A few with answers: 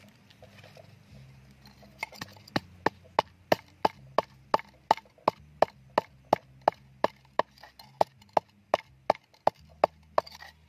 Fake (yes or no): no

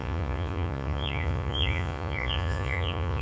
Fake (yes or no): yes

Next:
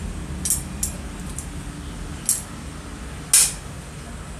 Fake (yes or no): no